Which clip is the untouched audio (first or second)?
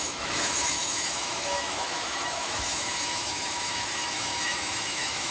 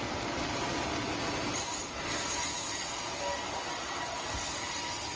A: second